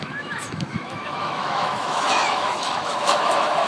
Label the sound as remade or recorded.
remade